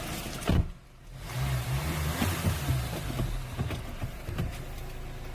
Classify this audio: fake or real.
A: real